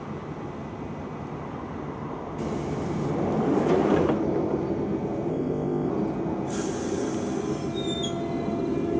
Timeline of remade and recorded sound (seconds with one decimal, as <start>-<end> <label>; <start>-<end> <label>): 0.0-5.3 recorded; 5.3-5.9 remade; 5.9-9.0 recorded